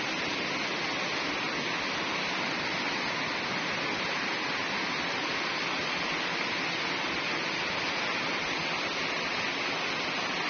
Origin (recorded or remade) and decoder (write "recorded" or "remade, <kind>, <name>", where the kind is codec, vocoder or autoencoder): recorded